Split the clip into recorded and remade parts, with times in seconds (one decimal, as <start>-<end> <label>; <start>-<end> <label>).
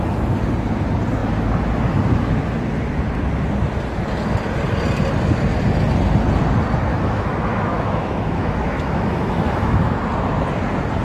0.0-6.9 recorded; 6.9-9.9 remade; 9.9-11.0 recorded